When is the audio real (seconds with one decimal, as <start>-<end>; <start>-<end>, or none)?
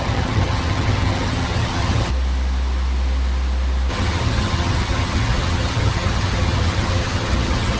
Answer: 2.1-3.9